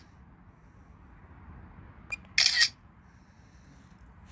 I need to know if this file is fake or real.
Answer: real